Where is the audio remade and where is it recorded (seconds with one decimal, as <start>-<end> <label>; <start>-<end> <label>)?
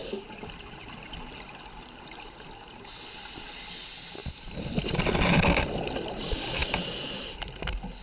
0.0-4.2 recorded; 4.2-5.2 remade; 5.2-8.0 recorded